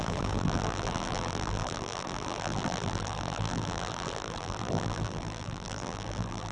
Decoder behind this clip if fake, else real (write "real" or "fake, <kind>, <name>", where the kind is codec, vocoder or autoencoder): fake, vocoder, BigVGAN v2